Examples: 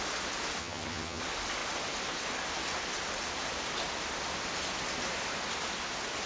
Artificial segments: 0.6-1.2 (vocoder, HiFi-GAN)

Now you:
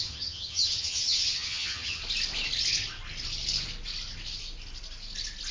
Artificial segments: 0.0-2.0 (vocoder, HiFi-GAN)